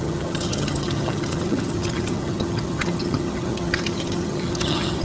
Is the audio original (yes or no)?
no